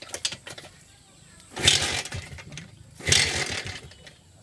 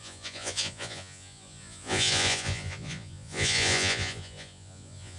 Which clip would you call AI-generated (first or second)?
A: second